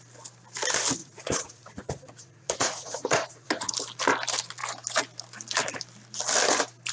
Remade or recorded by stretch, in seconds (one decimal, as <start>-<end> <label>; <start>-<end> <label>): 0.0-1.0 recorded; 1.0-3.7 remade; 3.7-6.9 recorded